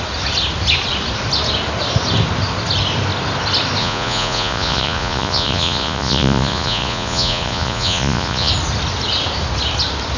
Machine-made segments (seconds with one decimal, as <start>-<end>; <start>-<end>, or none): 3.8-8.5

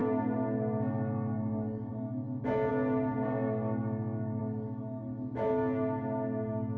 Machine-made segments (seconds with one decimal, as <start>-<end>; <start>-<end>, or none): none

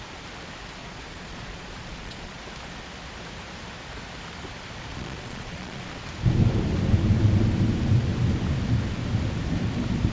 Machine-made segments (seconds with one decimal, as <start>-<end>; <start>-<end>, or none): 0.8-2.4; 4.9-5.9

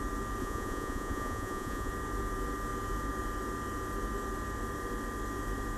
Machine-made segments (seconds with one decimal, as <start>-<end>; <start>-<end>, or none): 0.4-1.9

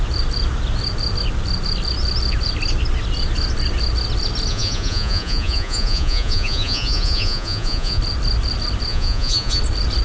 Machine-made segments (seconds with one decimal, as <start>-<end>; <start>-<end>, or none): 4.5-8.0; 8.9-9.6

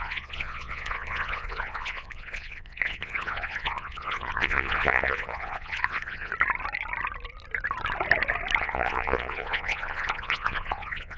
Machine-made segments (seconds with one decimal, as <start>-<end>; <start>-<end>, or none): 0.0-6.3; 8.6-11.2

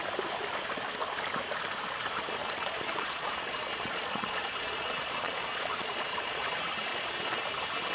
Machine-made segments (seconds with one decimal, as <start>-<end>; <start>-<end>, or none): 2.4-6.5; 6.9-7.4